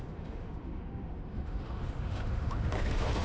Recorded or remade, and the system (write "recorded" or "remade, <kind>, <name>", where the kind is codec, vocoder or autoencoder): remade, autoencoder, DAC-VAE